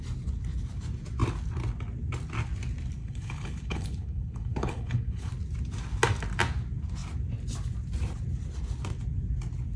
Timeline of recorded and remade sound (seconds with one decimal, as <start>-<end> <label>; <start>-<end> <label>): 0.0-3.0 recorded; 3.0-5.3 remade; 5.3-9.8 recorded